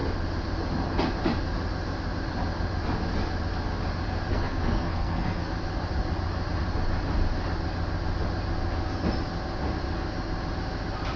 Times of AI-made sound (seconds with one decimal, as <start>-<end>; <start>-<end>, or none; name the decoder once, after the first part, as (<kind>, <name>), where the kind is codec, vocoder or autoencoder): 4.3-5.5 (codec, SNAC)